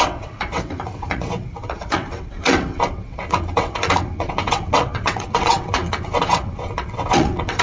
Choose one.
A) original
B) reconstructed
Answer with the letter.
B